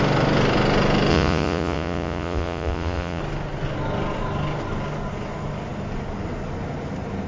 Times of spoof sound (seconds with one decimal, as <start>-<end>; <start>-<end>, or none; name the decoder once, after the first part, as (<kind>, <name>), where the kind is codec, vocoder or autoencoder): 1.1-3.2 (vocoder, Vocos)